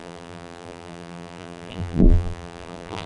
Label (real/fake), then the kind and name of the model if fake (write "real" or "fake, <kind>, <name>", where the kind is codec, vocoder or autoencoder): fake, vocoder, BigVGAN v2